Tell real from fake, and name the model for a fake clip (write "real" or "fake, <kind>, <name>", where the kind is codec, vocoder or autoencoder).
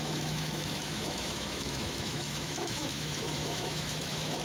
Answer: fake, autoencoder, DAC-VAE